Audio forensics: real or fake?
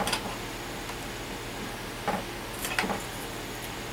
real